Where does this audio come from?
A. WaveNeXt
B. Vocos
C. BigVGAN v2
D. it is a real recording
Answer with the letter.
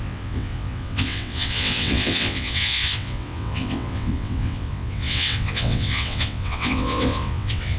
A